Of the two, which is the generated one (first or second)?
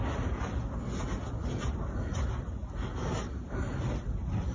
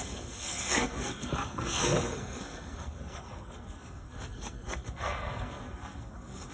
second